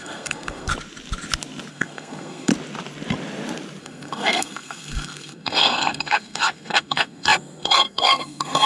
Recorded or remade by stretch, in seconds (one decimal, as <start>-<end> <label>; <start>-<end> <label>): 0.0-0.7 remade; 0.7-1.7 recorded; 1.7-2.5 remade; 2.5-3.8 recorded; 3.8-8.7 remade